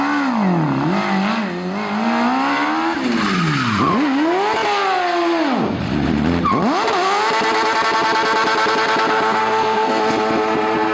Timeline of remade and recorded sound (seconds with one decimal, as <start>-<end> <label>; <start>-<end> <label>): 0.0-9.4 recorded; 9.4-10.0 remade; 10.0-10.9 recorded